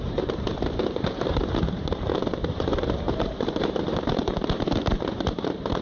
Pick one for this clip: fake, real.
fake